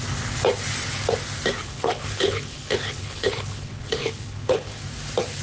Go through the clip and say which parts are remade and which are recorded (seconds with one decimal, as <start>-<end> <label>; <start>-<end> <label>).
0.0-1.6 recorded; 1.6-4.8 remade; 4.8-5.4 recorded